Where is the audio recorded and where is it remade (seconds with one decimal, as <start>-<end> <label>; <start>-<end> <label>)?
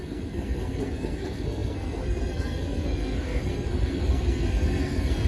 0.0-5.3 remade